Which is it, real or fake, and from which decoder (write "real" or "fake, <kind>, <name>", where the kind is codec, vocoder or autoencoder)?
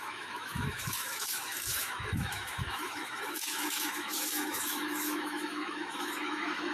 fake, autoencoder, DAC-VAE